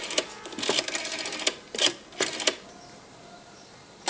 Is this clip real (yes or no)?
yes